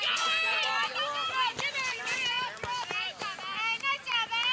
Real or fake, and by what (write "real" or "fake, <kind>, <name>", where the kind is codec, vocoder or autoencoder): real